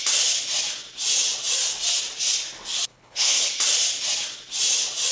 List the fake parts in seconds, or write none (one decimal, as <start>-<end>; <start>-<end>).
2.9-3.5